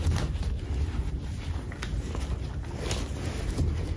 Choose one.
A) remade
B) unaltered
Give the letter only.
B